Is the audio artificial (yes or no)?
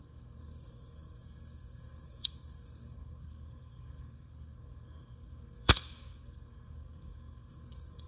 yes